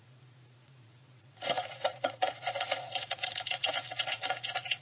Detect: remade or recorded remade